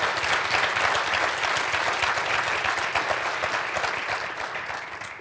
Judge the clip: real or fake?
real